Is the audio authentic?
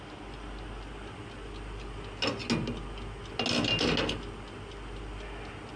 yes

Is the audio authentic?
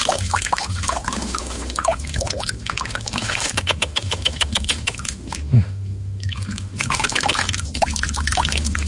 no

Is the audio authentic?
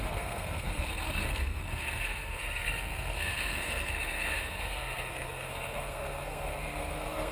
no